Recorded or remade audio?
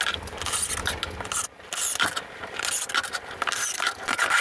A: recorded